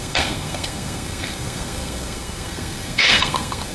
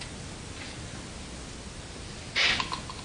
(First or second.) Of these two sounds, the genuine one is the second